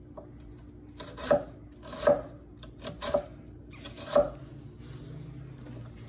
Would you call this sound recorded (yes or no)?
yes